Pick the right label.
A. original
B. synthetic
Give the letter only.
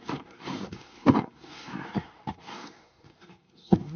B